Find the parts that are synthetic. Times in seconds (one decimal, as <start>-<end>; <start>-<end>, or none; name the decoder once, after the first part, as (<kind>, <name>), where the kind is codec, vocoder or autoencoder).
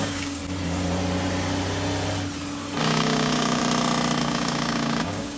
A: 0.0-0.4 (codec, DAC); 2.8-3.6; 4.2-5.4